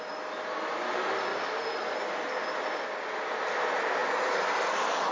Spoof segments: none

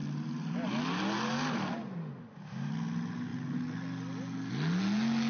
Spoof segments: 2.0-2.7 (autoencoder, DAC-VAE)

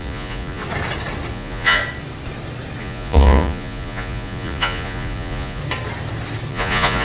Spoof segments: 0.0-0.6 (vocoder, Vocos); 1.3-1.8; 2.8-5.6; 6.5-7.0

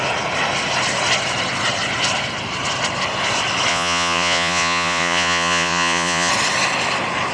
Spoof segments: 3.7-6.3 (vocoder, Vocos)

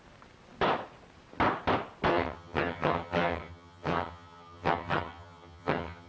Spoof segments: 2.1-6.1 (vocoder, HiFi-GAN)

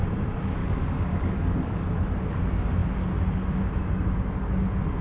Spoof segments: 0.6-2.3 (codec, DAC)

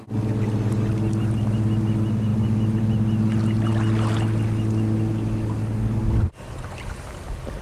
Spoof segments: none

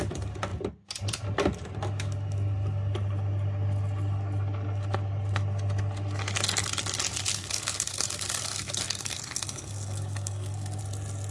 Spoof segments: 7.4-10.8 (codec, SNAC)